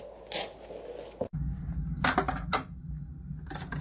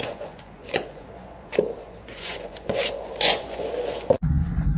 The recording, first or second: first